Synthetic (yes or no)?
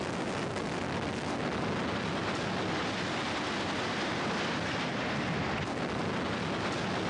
no